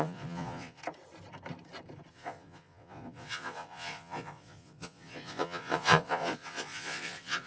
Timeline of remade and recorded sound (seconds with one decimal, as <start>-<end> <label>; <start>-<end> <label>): 0.0-0.8 remade; 0.8-2.1 recorded; 2.1-7.5 remade